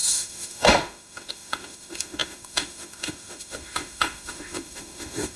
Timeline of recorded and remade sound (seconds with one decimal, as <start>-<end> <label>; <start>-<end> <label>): 0.0-5.4 remade